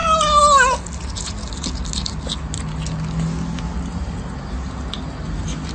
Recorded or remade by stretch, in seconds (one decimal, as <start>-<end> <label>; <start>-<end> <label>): 0.0-5.7 recorded